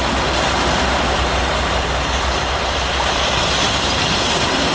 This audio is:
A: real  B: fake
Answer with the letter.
A